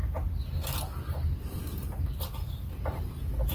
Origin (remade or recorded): recorded